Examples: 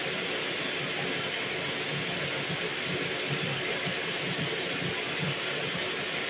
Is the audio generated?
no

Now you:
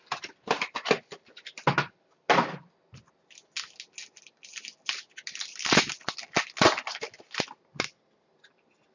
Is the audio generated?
no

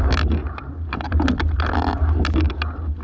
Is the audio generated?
no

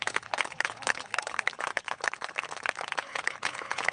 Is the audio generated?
yes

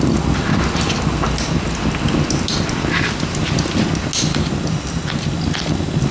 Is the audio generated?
no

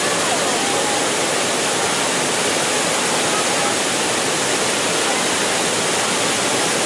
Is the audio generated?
no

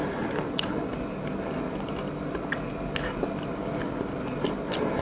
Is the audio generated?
no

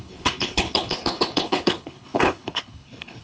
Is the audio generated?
yes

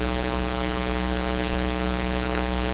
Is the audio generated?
yes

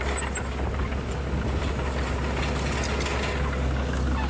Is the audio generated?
no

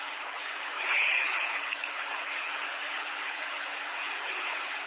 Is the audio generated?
yes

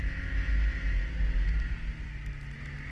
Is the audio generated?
no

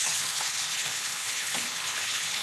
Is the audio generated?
yes